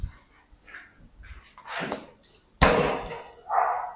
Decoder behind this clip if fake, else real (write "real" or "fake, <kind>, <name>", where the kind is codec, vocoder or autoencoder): real